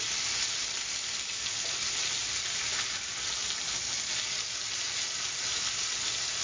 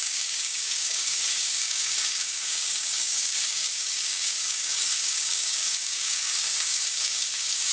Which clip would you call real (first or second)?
first